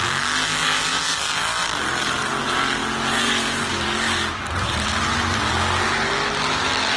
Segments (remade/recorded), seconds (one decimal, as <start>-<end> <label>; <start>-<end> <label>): 0.0-0.9 recorded; 0.9-1.8 remade; 1.8-7.0 recorded